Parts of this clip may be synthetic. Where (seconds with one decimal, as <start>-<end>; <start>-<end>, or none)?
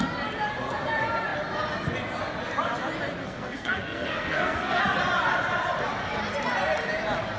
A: 3.2-4.8